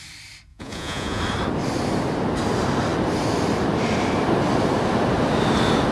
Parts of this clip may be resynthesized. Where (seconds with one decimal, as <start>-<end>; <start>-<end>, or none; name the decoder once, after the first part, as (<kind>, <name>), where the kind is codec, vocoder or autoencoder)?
0.5-1.2 (vocoder, Vocos)